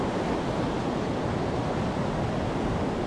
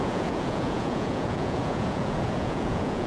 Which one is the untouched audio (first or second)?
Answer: first